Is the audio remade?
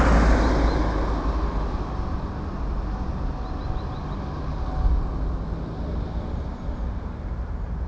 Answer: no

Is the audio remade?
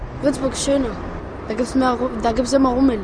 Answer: no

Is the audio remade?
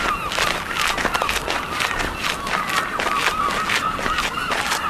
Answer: no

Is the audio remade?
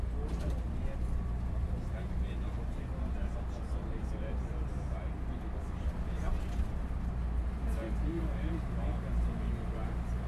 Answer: no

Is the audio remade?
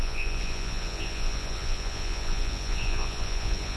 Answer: yes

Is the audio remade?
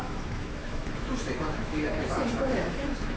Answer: yes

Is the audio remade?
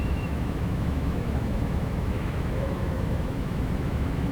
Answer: yes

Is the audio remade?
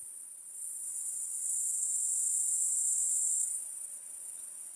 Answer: yes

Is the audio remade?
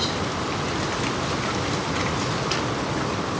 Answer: no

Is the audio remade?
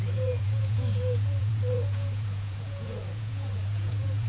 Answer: yes